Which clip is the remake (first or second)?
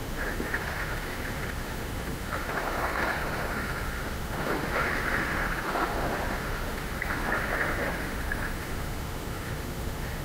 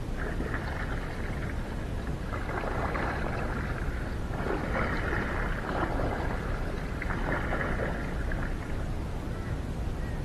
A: first